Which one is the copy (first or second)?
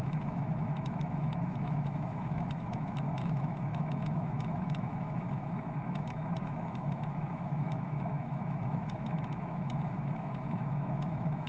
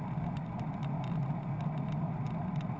first